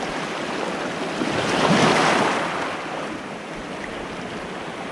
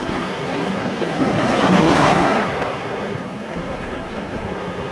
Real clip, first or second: first